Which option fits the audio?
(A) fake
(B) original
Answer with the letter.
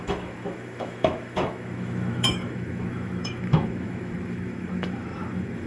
A